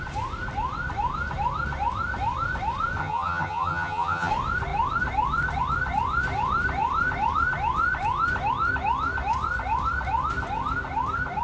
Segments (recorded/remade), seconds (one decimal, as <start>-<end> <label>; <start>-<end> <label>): 0.0-3.0 recorded; 3.0-4.3 remade; 4.3-11.4 recorded